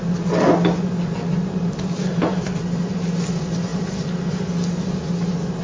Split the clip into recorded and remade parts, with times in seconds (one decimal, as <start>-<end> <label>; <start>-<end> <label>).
0.0-5.6 recorded